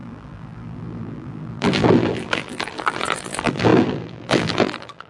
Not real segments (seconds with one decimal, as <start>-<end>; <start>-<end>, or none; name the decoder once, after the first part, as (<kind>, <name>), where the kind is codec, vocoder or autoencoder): 0.0-5.1 (vocoder, BigVGAN v2)